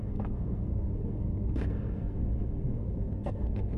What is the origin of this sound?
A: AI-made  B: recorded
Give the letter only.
A